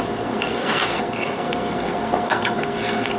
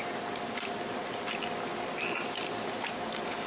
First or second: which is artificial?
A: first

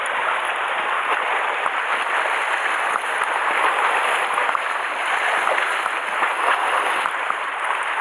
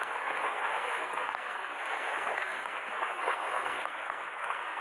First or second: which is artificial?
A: second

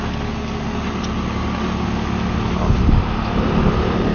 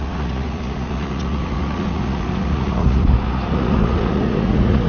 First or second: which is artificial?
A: second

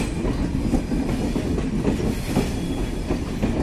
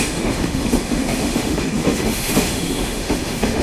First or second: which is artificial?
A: second